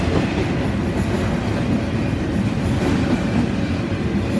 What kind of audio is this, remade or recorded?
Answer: recorded